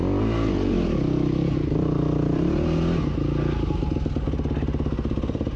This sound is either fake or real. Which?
real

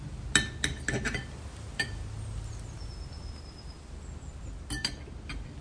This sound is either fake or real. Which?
real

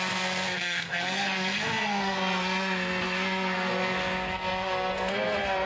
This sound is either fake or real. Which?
fake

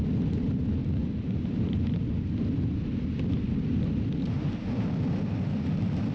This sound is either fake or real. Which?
real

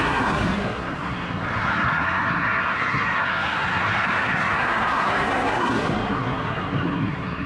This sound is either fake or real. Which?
fake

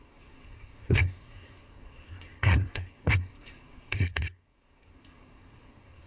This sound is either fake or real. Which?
fake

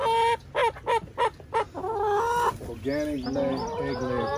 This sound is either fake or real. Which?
real